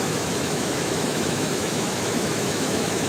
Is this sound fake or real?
fake